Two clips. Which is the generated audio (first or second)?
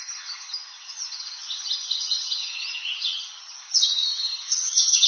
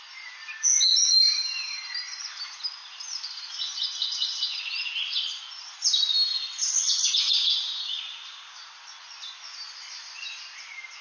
first